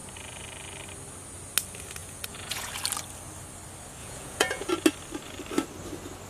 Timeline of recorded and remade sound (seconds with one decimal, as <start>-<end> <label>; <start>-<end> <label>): 0.0-2.0 recorded; 2.0-2.7 remade; 2.7-4.0 recorded; 4.0-4.7 remade; 4.7-6.3 recorded